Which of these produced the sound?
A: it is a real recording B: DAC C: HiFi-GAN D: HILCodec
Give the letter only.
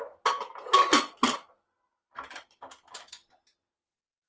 A